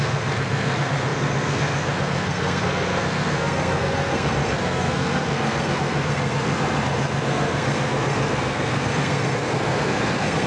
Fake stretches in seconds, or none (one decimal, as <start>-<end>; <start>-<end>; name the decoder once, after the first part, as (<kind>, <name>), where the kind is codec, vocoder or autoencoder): 0.0-10.5 (codec, SNAC)